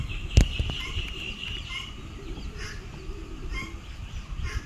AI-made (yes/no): no